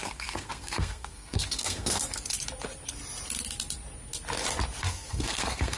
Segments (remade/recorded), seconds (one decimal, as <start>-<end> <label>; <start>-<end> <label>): 0.0-2.0 remade; 2.0-4.8 recorded; 4.8-5.8 remade